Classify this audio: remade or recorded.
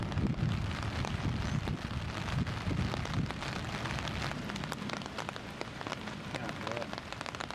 recorded